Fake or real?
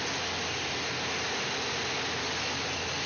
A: real